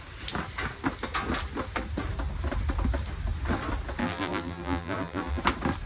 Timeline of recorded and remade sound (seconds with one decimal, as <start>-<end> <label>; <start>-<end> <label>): 0.0-4.0 recorded; 4.0-5.4 remade; 5.4-5.9 recorded